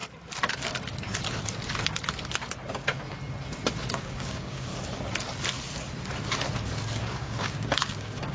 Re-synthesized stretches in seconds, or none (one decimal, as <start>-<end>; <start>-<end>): 3.8-4.7; 7.0-8.3